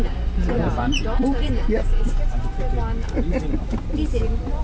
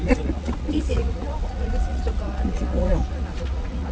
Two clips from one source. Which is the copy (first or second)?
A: second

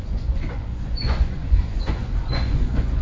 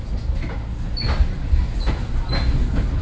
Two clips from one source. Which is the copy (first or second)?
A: first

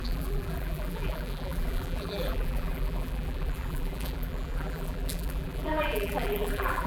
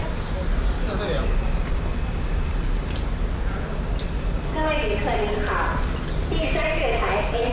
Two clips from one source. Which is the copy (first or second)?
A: first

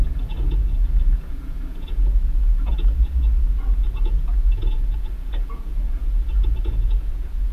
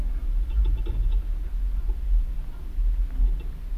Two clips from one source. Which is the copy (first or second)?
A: first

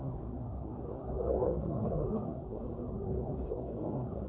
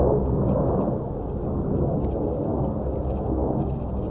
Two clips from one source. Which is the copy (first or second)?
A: first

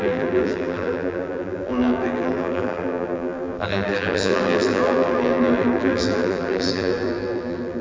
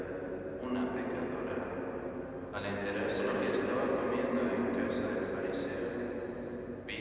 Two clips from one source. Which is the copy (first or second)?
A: first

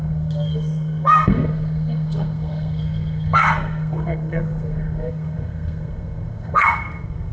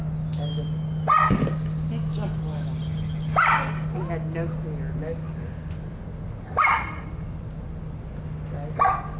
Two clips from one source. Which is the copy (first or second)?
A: first